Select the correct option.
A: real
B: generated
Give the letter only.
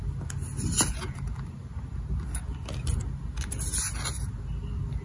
A